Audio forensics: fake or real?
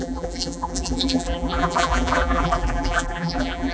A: fake